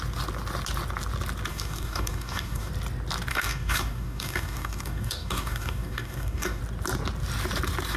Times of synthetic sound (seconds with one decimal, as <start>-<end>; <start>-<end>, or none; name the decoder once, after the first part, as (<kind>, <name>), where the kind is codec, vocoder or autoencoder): 1.5-2.7 (codec, DAC); 3.3-6.6